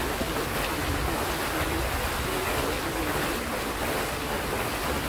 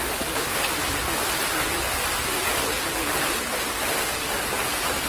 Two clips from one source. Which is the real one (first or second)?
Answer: first